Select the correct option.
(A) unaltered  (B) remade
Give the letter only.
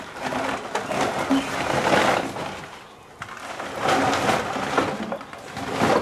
A